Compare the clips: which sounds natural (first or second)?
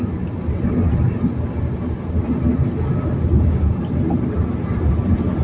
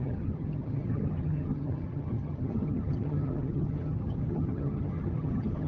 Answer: first